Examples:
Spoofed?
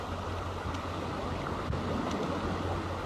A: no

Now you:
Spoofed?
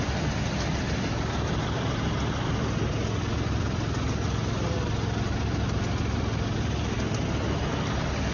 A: no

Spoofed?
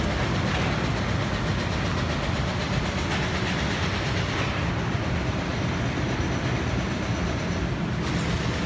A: no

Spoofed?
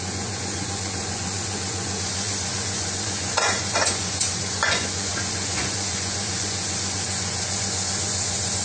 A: yes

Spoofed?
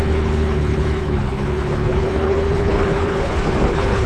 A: yes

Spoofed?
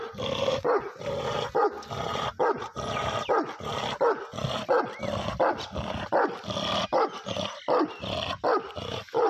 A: no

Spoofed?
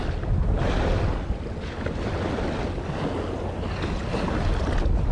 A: no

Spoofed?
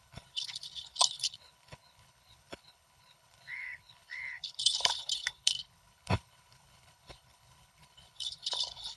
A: yes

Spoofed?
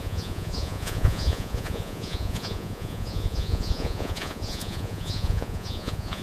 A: yes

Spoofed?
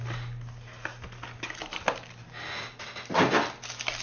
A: no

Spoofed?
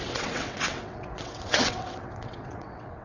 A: yes